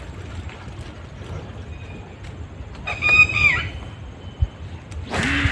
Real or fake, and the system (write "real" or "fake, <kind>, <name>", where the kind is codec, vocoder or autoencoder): real